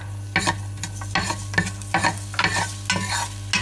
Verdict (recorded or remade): recorded